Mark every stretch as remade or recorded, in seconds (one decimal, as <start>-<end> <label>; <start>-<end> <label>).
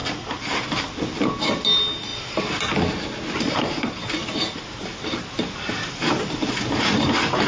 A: 0.0-7.5 recorded